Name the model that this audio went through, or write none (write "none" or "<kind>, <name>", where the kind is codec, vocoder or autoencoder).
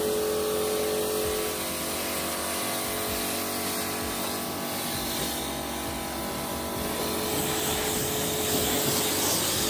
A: none